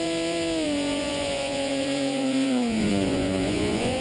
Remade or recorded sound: remade